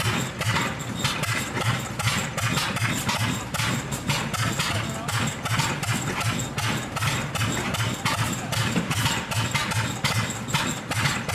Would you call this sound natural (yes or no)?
yes